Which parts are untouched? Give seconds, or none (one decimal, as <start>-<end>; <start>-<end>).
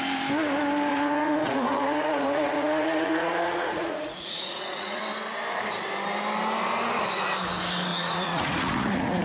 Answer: 0.0-0.9; 5.0-7.9